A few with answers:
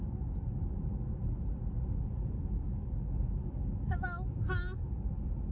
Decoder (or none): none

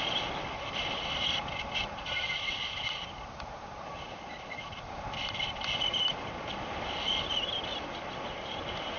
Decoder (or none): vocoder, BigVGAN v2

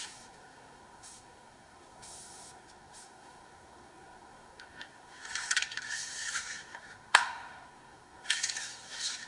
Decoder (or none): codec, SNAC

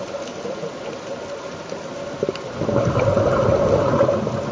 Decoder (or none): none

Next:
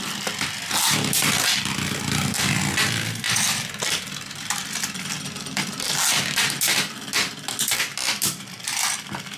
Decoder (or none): none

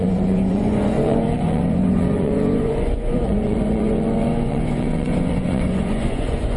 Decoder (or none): vocoder, Vocos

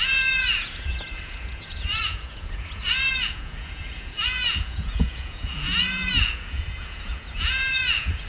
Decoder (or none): vocoder, Vocos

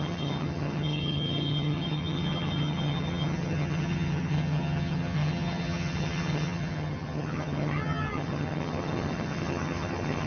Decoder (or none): vocoder, HiFi-GAN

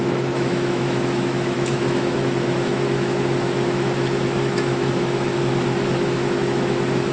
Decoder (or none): autoencoder, DAC-VAE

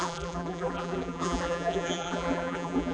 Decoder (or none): vocoder, BigVGAN v2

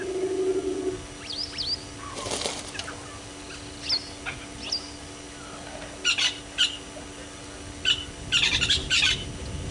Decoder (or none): none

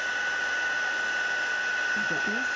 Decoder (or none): none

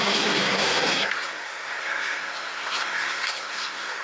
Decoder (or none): codec, SNAC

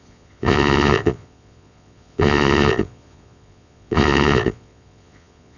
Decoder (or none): vocoder, Vocos